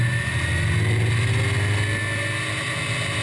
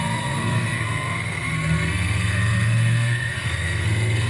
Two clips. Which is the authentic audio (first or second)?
first